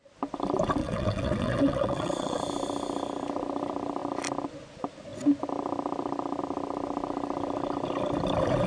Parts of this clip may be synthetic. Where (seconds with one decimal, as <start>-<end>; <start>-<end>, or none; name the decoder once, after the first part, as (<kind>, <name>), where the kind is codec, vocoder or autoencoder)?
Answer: 0.8-2.4 (vocoder, WaveNeXt)